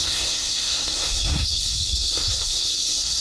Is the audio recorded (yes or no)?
no